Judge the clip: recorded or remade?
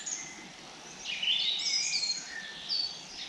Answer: recorded